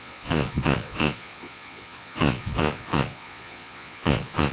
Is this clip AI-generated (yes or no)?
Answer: yes